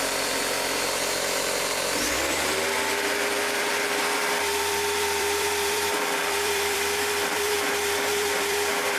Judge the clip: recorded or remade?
remade